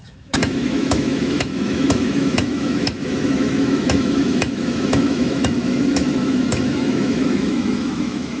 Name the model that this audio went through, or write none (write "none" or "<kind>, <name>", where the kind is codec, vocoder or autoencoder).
autoencoder, DAC-VAE